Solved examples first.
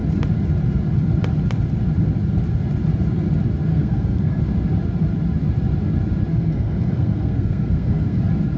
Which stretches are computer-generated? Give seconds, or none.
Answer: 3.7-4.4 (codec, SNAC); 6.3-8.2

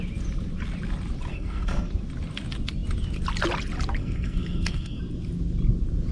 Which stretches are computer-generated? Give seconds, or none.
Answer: 1.3-1.9 (codec, SNAC); 4.0-5.0

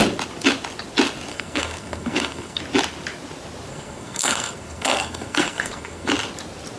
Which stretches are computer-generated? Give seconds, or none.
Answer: 1.3-2.6 (codec, SNAC); 3.7-6.1

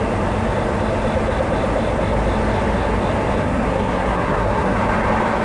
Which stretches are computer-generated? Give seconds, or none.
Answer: 3.4-4.8 (codec, SNAC)

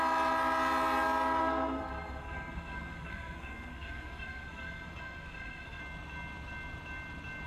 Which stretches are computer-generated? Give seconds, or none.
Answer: 1.4-5.8 (codec, SNAC)

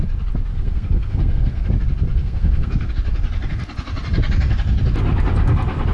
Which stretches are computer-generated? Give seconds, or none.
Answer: 0.5-1.7 (codec, SNAC); 2.1-2.9

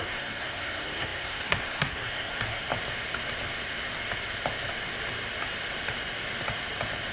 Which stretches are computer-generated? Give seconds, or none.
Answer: 0.0-2.7 (codec, SNAC)

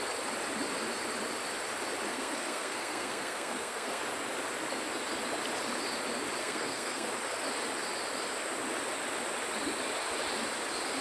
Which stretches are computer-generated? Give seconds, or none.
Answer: 2.1-4.0 (codec, SNAC); 6.4-7.1